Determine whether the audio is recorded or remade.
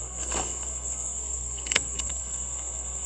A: remade